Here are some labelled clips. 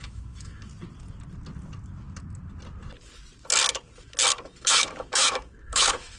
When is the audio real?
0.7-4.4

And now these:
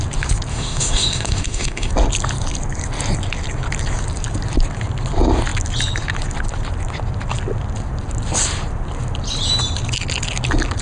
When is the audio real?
0.0-0.5; 1.9-10.8

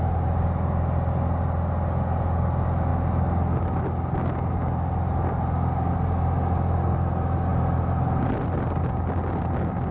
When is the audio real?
0.0-9.9

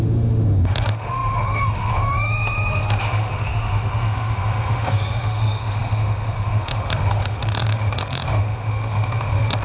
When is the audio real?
none

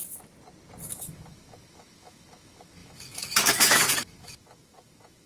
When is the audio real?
0.0-0.9

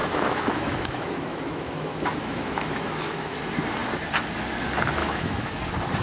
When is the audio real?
3.4-5.0; 5.6-6.0

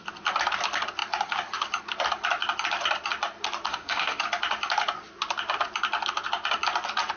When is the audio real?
0.0-3.7; 4.2-7.2